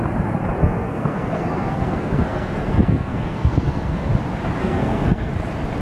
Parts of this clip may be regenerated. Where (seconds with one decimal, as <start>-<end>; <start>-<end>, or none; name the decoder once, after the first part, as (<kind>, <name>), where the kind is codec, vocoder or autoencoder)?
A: 0.6-4.1 (codec, SNAC); 4.6-5.3